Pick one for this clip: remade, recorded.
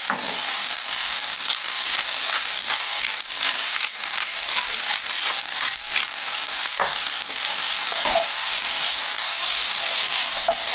remade